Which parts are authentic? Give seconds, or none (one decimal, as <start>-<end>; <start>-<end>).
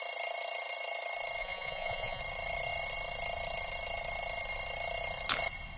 0.0-1.4; 2.2-5.8